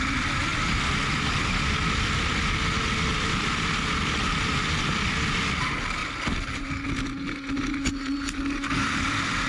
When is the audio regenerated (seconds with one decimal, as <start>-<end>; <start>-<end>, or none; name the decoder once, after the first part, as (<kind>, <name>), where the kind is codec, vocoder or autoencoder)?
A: 0.5-1.3 (vocoder, BigVGAN v2); 6.0-6.6